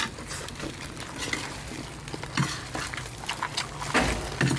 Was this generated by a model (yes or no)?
no